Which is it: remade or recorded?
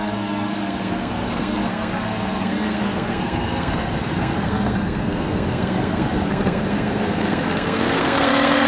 remade